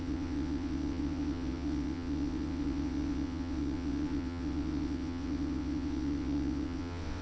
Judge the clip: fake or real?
fake